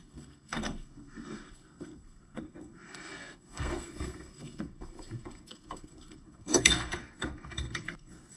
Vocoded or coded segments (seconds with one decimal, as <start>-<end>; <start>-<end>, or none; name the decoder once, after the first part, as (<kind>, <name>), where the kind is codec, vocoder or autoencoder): 0.0-8.4 (codec, SNAC)